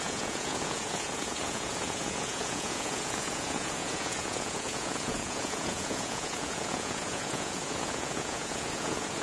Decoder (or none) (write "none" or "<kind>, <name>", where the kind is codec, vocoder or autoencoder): vocoder, Vocos